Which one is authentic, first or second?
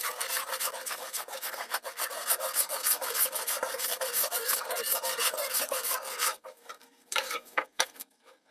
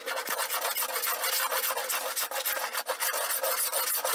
second